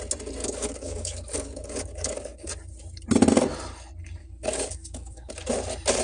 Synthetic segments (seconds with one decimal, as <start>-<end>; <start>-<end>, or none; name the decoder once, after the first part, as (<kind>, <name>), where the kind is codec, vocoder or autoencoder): 0.4-2.5 (codec, DAC); 4.2-5.3